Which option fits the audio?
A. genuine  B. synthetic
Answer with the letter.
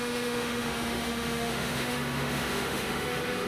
B